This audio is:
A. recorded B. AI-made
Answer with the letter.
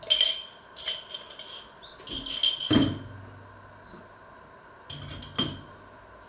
A